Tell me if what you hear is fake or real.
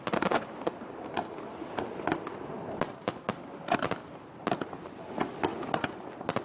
real